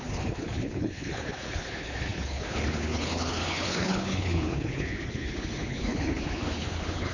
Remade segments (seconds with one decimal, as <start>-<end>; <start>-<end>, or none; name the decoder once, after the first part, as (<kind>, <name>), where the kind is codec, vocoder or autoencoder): 0.0-7.1 (codec, HILCodec)

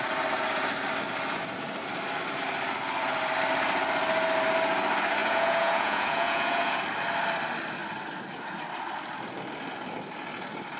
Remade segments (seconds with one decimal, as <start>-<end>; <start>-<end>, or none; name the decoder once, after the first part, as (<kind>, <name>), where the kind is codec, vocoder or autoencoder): 5.2-6.8 (vocoder, Vocos)

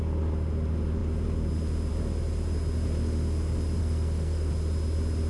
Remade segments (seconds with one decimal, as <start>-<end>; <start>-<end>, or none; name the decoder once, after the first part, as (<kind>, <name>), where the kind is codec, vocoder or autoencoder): 3.8-4.5 (codec, SNAC)

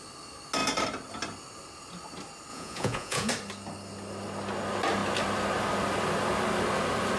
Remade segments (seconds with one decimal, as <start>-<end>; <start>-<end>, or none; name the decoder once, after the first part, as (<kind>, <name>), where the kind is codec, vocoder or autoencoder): 2.5-3.3 (vocoder, Vocos)